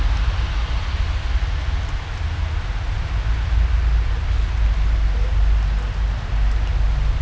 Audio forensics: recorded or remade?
recorded